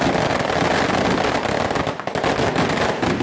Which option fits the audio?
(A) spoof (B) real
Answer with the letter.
B